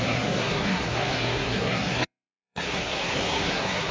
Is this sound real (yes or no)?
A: no